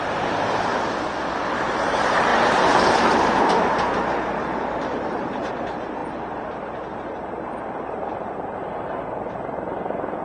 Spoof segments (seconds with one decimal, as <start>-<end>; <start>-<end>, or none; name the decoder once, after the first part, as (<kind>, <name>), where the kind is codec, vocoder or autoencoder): 0.0-0.7 (vocoder, BigVGAN v2); 1.6-10.2